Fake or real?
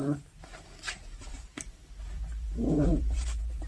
fake